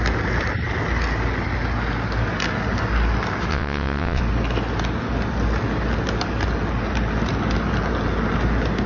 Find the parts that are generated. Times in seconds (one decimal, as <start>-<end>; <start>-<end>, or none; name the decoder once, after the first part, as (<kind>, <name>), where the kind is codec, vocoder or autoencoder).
3.5-4.2 (vocoder, WaveNeXt)